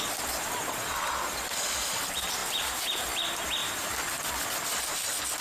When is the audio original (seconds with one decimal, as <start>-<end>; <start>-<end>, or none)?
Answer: 0.0-2.4; 3.0-3.6; 4.3-5.4